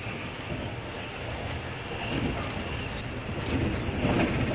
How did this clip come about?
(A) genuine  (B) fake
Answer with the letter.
A